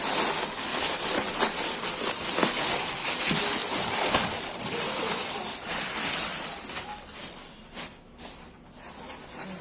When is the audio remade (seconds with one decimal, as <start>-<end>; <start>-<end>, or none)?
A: 0.7-1.8; 3.6-5.9